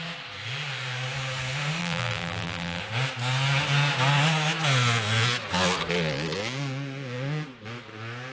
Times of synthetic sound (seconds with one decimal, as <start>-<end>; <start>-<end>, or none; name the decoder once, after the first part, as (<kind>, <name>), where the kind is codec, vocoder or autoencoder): 1.8-2.8 (vocoder, BigVGAN v2)